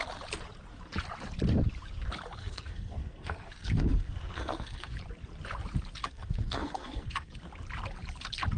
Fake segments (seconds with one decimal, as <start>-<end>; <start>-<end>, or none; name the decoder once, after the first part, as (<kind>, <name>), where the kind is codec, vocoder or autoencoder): 2.4-4.9 (codec, SNAC); 6.0-7.3